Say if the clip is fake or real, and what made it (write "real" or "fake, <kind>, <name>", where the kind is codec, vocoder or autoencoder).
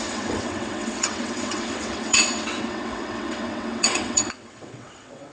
fake, vocoder, WaveNeXt